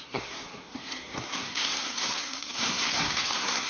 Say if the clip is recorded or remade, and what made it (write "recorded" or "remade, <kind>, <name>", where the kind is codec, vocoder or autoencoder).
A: remade, codec, SNAC